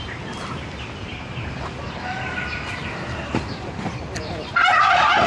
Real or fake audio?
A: real